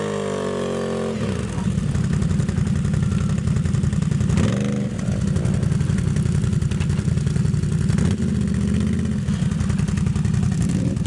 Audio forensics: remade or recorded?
recorded